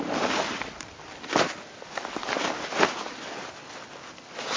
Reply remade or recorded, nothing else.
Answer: recorded